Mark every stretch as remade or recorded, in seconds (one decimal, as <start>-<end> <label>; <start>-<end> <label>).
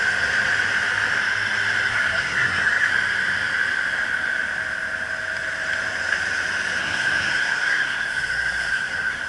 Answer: 0.0-1.9 recorded; 1.9-2.9 remade; 2.9-6.8 recorded; 6.8-9.3 remade